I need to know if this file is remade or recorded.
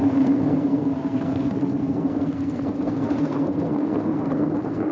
remade